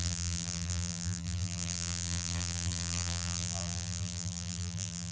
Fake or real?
fake